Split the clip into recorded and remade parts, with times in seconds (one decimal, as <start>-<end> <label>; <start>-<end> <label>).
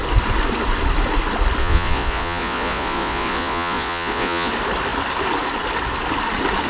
0.0-1.6 recorded; 1.6-4.5 remade; 4.5-6.7 recorded